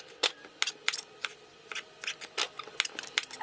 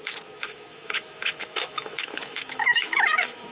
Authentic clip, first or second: first